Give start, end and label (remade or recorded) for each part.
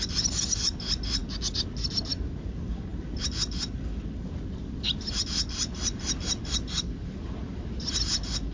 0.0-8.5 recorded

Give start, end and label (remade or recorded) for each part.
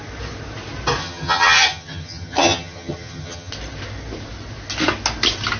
0.0-1.0 recorded; 1.0-3.5 remade; 3.5-5.6 recorded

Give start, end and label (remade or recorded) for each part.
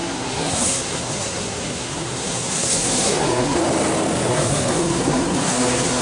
0.0-3.6 remade; 3.6-4.3 recorded; 4.3-6.0 remade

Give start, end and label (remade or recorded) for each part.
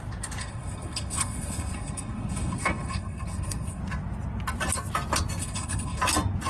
0.0-0.4 recorded; 0.4-3.8 remade; 3.8-5.4 recorded; 5.4-6.0 remade; 6.0-6.5 recorded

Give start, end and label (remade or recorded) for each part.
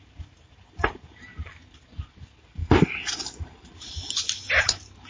0.0-2.6 recorded; 2.6-3.7 remade; 3.7-5.1 recorded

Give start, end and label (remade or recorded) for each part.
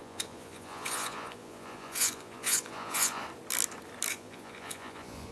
0.0-3.2 remade; 3.2-4.1 recorded; 4.1-5.3 remade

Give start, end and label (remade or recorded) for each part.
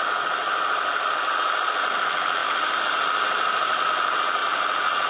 0.0-0.4 recorded; 0.4-1.7 remade; 1.7-2.4 recorded; 2.4-3.8 remade; 3.8-5.1 recorded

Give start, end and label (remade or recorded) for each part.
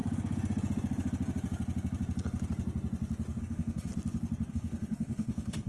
0.0-3.4 recorded; 3.4-3.9 remade; 3.9-4.5 recorded; 4.5-5.7 remade